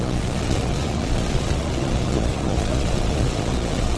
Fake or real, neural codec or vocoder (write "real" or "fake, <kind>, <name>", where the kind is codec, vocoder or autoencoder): fake, vocoder, Vocos